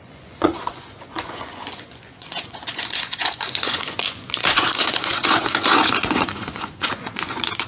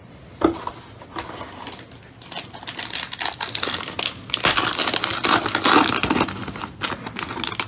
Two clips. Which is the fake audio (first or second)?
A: first